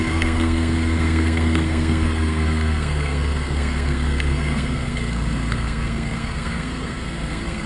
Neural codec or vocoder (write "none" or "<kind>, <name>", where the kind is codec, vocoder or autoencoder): codec, SNAC